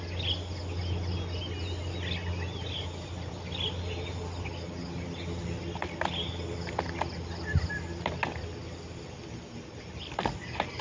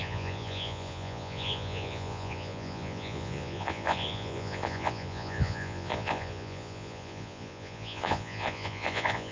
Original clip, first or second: first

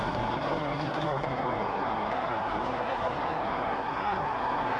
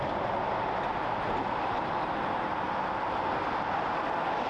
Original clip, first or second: second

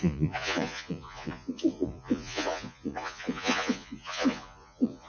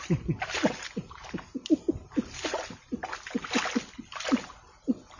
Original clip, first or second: second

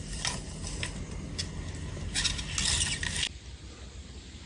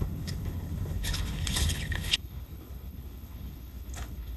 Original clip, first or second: first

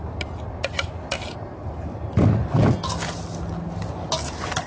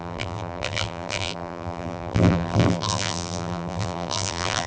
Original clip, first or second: first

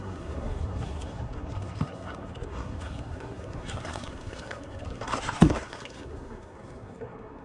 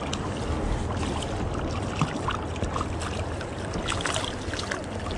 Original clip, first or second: second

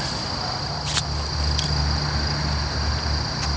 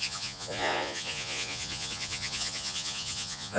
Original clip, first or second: first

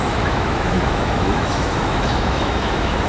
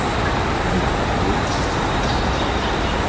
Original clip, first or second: second